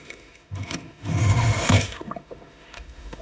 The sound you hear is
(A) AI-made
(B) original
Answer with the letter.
A